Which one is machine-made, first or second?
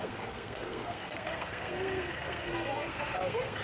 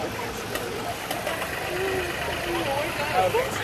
first